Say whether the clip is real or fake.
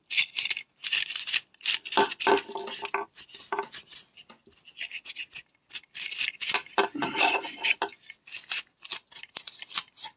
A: real